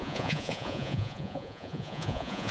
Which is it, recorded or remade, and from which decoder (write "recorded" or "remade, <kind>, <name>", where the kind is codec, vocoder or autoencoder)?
remade, vocoder, Vocos